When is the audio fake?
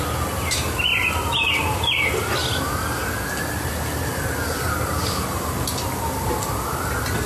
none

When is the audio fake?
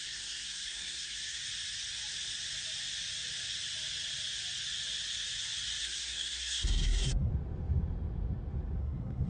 0.0-1.4 (codec, SNAC); 5.8-7.3; 8.8-9.3